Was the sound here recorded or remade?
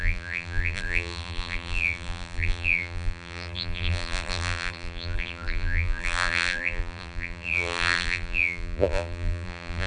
remade